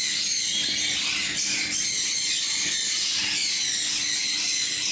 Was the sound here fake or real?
real